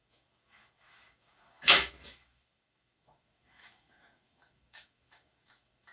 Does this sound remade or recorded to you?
remade